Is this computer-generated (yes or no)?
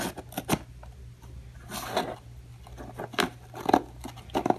no